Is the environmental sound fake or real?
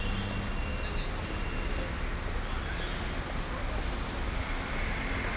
real